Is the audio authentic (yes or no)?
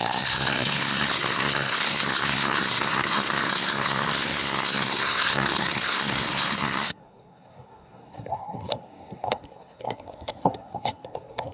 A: no